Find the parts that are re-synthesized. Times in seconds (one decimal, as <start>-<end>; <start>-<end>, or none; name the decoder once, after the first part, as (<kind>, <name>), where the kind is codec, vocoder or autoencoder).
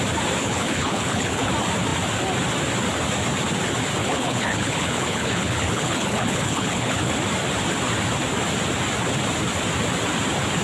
0.4-1.5 (codec, HILCodec); 4.0-7.1